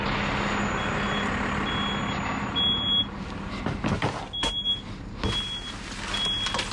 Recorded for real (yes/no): yes